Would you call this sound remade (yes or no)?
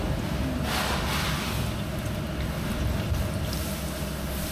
no